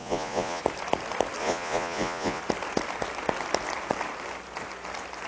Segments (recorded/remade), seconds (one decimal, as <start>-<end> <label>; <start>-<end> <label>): 0.0-0.6 remade; 0.6-1.4 recorded; 1.4-2.4 remade; 2.4-5.3 recorded